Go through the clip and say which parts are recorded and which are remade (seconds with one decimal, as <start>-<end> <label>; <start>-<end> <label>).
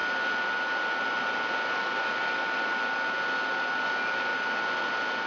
0.0-5.3 recorded